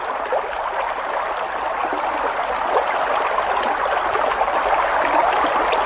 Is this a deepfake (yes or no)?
no